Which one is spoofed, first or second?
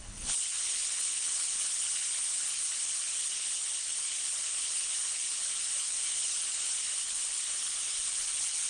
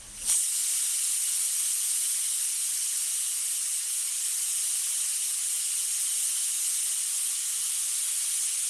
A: first